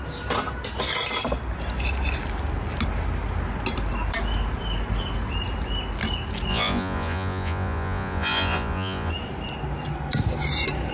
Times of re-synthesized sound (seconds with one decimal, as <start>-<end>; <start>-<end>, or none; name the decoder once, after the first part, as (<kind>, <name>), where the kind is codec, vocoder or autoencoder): 6.5-9.1 (vocoder, Vocos)